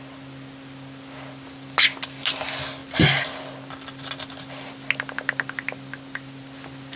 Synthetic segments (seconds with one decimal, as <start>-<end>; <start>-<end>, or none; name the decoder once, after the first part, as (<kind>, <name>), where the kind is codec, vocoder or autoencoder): 2.8-4.3 (vocoder, BigVGAN v2)